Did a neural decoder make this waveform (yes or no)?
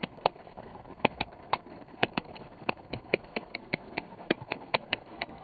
yes